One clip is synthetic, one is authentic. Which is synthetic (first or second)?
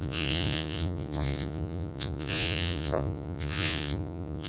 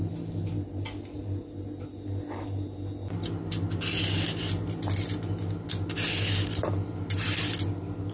first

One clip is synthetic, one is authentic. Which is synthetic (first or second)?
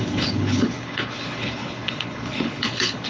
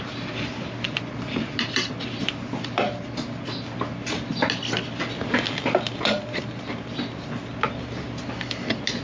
first